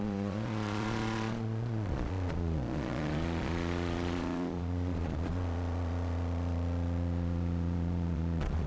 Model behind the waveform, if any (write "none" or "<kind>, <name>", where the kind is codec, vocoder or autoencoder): vocoder, Vocos